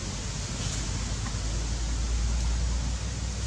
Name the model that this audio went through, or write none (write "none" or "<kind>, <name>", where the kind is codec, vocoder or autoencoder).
none